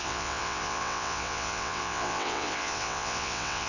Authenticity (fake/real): fake